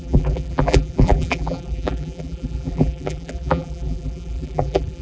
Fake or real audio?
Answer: fake